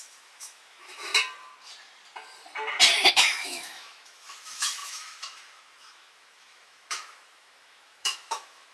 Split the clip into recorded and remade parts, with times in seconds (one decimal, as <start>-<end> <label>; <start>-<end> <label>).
0.0-1.1 remade; 1.1-3.1 recorded; 3.1-8.7 remade